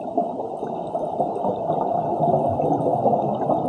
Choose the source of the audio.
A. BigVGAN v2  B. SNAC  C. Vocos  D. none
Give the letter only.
D